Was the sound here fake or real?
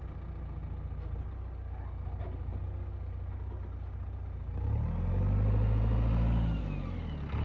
real